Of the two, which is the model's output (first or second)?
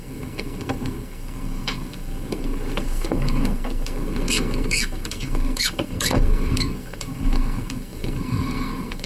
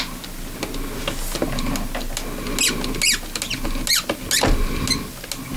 first